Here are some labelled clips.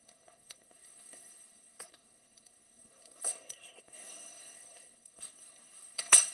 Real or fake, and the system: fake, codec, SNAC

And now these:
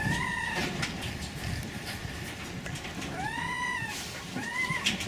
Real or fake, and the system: real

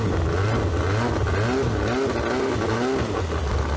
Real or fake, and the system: real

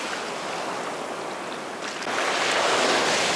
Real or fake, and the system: real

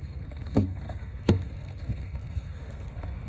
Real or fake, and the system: fake, codec, SNAC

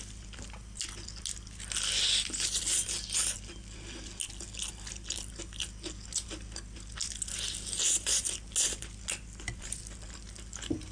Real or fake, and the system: real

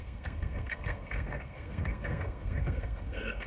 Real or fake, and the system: fake, codec, SNAC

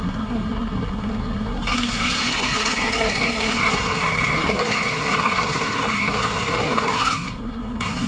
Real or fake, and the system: fake, codec, SNAC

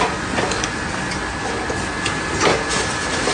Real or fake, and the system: real